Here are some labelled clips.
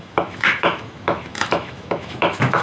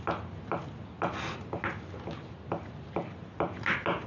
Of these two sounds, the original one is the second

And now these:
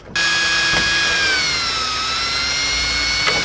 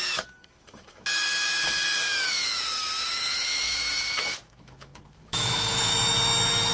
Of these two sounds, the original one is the first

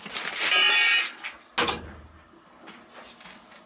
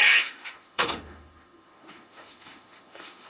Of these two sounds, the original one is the first